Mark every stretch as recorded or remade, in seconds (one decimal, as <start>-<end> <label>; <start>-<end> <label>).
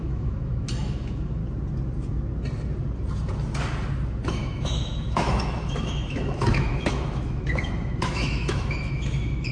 0.0-1.4 remade; 1.4-4.3 recorded; 4.3-9.5 remade